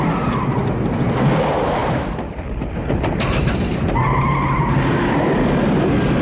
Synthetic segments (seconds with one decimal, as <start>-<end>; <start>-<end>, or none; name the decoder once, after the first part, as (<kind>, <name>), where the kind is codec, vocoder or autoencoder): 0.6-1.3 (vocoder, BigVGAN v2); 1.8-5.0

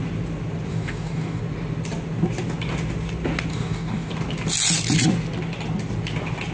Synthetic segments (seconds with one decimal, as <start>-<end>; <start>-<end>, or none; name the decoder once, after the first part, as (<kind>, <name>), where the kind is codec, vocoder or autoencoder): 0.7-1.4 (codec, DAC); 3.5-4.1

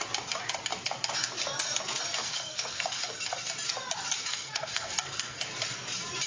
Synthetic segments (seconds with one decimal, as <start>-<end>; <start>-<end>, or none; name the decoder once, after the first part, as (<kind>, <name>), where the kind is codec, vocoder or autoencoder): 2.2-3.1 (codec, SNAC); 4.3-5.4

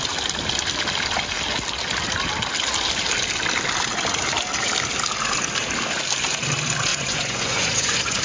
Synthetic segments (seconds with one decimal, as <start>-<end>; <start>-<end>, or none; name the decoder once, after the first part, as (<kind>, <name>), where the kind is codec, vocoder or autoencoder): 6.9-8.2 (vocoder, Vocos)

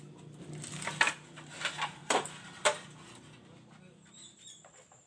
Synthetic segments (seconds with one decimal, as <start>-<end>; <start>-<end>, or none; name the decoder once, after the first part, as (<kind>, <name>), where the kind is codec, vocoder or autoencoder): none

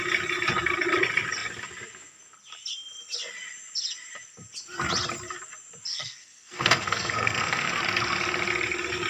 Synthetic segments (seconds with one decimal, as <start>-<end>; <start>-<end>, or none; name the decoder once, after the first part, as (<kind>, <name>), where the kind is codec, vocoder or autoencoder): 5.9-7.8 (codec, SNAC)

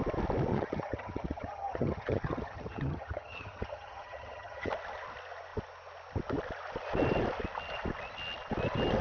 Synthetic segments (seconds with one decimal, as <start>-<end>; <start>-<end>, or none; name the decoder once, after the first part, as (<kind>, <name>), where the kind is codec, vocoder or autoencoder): 0.5-4.7 (vocoder, HiFi-GAN)